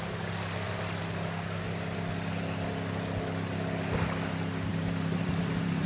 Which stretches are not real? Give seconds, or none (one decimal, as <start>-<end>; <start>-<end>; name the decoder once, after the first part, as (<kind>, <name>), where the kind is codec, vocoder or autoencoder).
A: 4.7-5.9 (vocoder, BigVGAN v2)